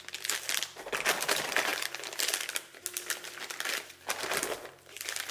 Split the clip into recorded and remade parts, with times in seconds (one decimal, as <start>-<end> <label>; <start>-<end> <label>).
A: 0.0-5.3 recorded

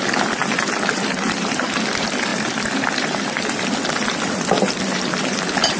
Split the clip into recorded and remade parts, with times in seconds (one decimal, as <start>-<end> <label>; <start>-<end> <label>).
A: 0.0-5.8 remade

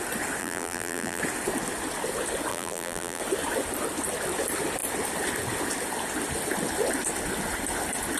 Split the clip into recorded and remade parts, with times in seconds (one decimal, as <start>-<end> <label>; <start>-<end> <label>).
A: 0.0-0.4 recorded; 0.4-1.2 remade; 1.2-2.5 recorded; 2.5-3.2 remade; 3.2-8.2 recorded

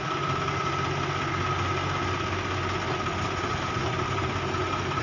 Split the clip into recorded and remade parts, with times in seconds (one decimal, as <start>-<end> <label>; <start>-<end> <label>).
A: 0.0-3.4 recorded; 3.4-5.0 remade

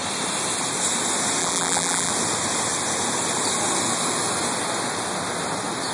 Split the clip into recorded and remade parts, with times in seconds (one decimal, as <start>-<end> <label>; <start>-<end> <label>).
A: 0.0-1.4 recorded; 1.4-2.1 remade; 2.1-5.9 recorded